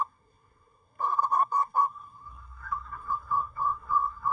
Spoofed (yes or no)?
yes